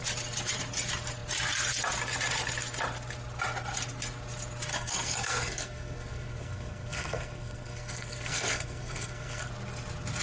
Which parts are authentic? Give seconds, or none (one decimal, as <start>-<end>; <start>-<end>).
0.0-4.7; 9.5-10.2